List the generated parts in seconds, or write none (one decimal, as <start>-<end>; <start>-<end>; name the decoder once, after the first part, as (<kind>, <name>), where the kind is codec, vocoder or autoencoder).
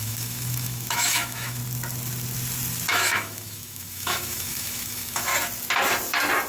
0.0-1.6 (autoencoder, DAC-VAE); 2.9-5.3